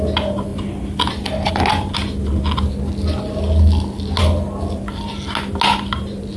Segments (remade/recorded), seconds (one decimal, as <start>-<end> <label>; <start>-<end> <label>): 0.0-6.4 recorded